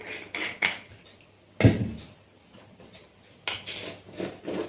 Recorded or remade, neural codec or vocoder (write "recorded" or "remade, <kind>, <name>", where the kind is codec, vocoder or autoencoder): recorded